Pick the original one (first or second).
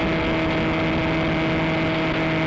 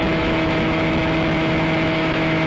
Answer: first